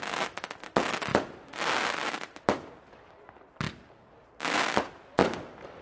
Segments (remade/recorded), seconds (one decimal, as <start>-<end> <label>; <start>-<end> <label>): 0.0-5.8 recorded